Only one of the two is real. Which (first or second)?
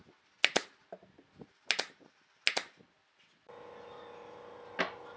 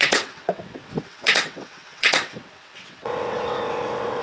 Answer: first